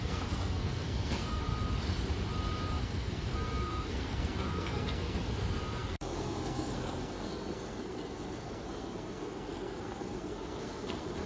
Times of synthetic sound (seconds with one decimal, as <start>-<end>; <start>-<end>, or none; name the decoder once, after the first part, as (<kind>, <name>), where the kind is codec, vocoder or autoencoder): 0.0-1.5 (codec, SNAC); 2.7-11.3